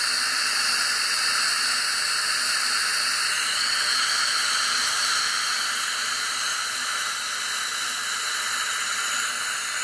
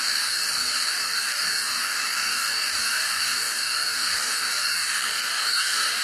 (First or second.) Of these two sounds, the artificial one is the second